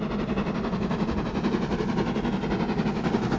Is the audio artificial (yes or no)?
no